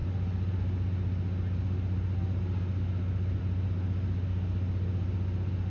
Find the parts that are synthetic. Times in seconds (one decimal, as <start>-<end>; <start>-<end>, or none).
none